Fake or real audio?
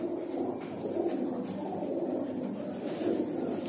real